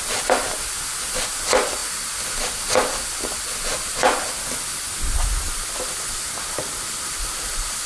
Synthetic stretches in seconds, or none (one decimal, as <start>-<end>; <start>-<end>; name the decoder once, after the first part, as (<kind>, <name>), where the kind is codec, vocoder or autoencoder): none